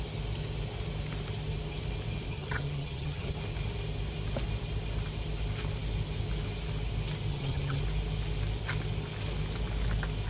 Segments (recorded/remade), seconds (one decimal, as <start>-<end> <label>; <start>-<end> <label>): 0.0-2.3 recorded; 2.3-3.3 remade; 3.3-7.3 recorded; 7.3-7.8 remade; 7.8-10.3 recorded